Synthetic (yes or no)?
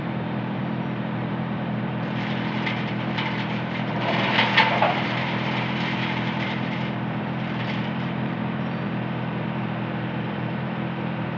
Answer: yes